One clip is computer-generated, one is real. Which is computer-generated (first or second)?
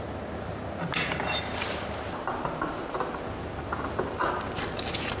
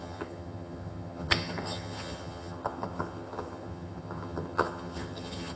second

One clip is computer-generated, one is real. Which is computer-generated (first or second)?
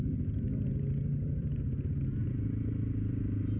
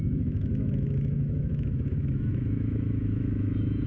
second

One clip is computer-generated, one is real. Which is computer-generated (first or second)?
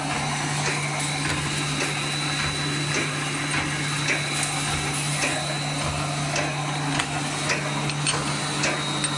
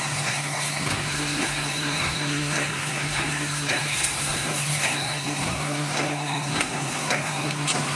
second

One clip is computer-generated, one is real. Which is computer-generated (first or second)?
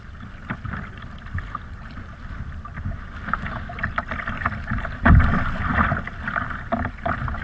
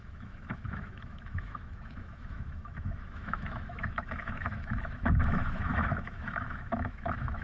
second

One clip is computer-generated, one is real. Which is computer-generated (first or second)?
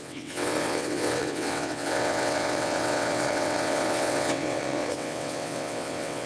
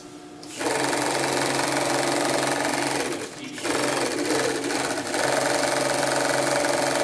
first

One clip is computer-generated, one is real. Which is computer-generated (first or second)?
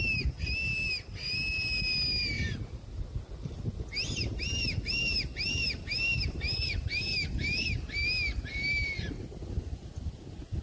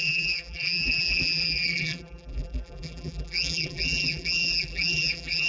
second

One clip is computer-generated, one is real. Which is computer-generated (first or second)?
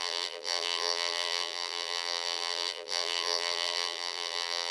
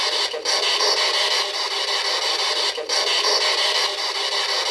first